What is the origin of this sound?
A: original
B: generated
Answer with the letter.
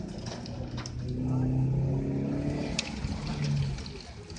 A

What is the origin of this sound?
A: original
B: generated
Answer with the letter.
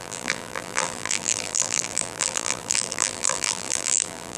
B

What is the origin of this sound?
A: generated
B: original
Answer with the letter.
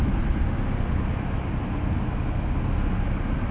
B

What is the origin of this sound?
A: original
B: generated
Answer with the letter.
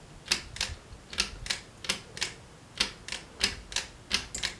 A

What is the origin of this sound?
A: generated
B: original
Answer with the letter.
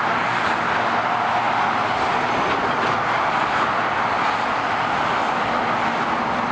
B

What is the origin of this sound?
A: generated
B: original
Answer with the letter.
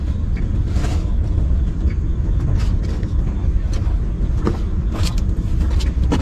B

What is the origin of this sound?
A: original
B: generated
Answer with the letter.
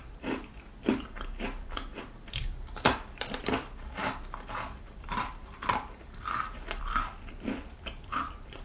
B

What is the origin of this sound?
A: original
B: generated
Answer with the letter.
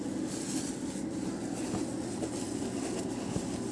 A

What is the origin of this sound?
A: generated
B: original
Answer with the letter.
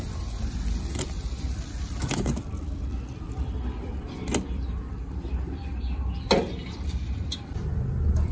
A